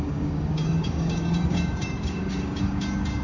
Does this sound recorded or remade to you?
remade